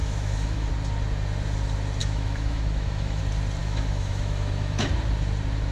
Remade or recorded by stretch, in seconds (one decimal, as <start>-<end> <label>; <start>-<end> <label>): 0.0-0.7 remade; 0.7-2.0 recorded; 2.0-3.2 remade; 3.2-3.6 recorded; 3.6-4.9 remade; 4.9-5.7 recorded